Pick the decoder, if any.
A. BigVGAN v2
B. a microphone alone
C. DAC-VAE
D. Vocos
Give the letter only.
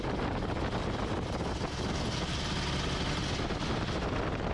B